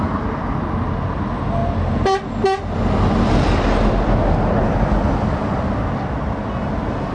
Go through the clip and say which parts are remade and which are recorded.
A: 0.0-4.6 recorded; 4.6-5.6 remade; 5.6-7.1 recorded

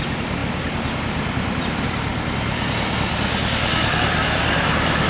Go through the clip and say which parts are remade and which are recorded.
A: 0.0-2.1 remade; 2.1-3.9 recorded; 3.9-5.1 remade

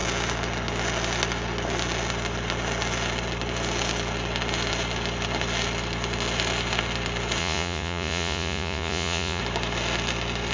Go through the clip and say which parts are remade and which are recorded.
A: 0.0-7.4 recorded; 7.4-9.4 remade; 9.4-10.5 recorded

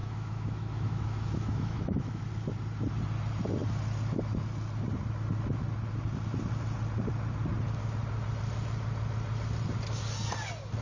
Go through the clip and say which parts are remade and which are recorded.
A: 0.0-2.2 remade; 2.2-10.8 recorded

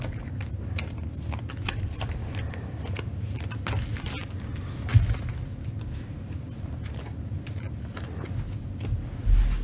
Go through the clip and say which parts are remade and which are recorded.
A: 0.0-9.6 recorded